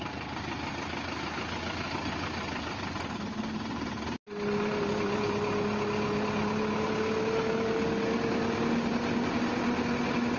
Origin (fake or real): real